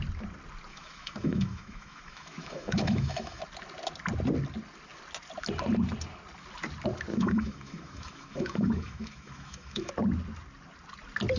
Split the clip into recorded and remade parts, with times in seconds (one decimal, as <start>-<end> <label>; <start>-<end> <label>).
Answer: 0.0-0.7 recorded; 0.7-3.4 remade; 3.4-7.1 recorded; 7.1-9.9 remade; 9.9-11.4 recorded